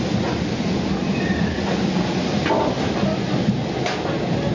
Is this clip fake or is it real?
real